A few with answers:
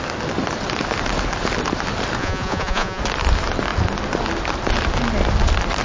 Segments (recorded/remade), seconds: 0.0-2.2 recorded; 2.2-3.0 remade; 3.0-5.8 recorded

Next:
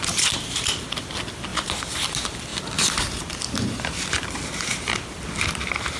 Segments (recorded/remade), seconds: 0.0-6.0 recorded

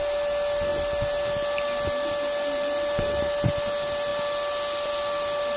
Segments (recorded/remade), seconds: 0.0-5.6 recorded